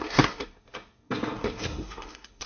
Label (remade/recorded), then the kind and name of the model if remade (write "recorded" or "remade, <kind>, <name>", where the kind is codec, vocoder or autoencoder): remade, codec, SNAC